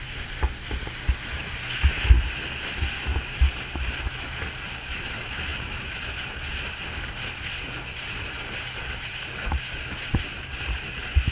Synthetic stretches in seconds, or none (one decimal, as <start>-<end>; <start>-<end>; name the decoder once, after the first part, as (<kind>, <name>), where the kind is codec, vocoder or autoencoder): none